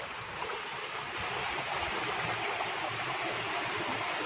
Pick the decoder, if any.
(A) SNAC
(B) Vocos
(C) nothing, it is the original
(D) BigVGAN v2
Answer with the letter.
C